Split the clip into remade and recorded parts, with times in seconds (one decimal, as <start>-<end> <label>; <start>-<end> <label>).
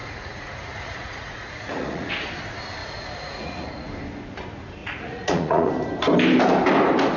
0.0-2.1 remade; 2.1-2.8 recorded; 2.8-3.9 remade; 3.9-4.8 recorded; 4.8-5.7 remade; 5.7-7.2 recorded